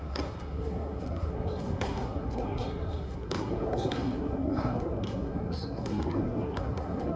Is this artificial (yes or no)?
yes